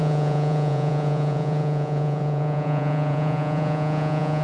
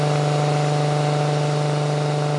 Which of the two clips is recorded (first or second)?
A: second